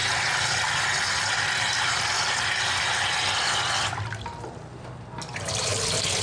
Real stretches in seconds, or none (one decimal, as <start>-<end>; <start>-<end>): 0.0-6.2